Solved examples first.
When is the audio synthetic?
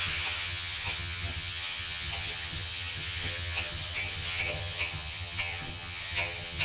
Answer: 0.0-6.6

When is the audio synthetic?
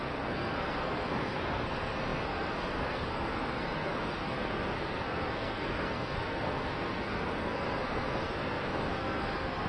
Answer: 0.0-9.7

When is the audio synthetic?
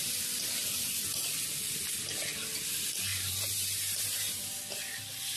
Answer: 3.1-4.6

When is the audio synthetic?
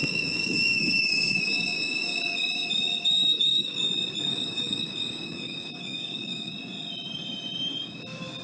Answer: 0.0-2.2; 3.3-3.9; 4.3-6.5